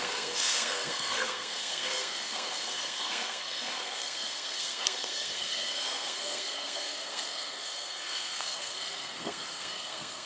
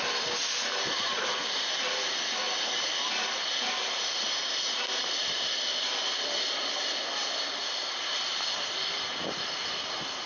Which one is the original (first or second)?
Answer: second